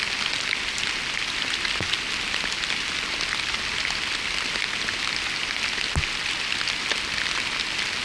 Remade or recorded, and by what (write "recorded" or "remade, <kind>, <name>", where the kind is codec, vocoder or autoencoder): recorded